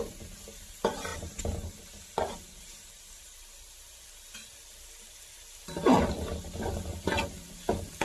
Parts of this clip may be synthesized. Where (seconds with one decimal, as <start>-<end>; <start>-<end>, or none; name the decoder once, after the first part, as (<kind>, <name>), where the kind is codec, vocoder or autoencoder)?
none